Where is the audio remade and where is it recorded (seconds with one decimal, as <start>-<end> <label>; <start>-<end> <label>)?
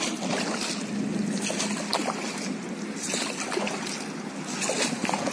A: 0.0-5.3 recorded